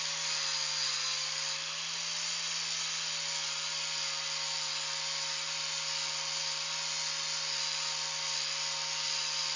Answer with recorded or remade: recorded